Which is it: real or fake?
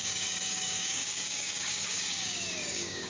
fake